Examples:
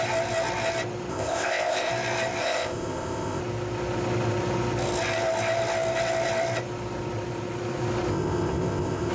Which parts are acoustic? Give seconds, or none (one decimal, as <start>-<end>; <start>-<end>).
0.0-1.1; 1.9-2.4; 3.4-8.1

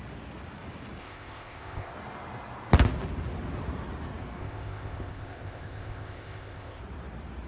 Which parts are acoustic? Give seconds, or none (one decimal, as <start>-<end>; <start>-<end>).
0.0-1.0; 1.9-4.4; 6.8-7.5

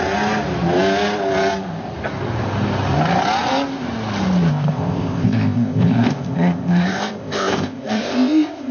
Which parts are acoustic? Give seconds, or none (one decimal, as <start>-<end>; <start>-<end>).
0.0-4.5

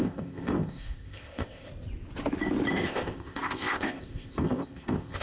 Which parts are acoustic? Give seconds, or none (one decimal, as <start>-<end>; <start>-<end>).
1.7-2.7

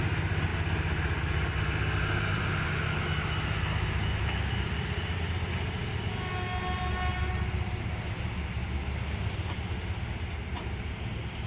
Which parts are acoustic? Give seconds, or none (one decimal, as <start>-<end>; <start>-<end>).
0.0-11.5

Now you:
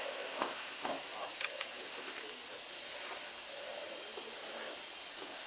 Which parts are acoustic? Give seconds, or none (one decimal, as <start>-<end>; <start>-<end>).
0.9-1.8; 2.2-5.1

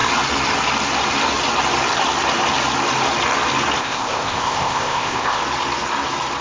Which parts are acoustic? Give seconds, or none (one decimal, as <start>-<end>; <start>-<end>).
0.0-3.8; 5.4-6.4